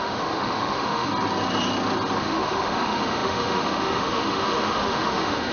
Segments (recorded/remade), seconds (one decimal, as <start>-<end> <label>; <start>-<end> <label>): 0.0-1.1 remade; 1.1-2.2 recorded; 2.2-5.5 remade